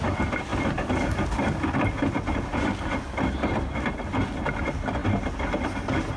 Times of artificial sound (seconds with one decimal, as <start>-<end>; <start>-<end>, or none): 0.5-1.3